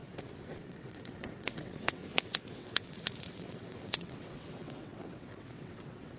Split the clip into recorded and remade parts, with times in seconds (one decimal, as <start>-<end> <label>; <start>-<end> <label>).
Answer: 0.0-0.6 recorded; 0.6-2.0 remade; 2.0-2.5 recorded; 2.5-6.2 remade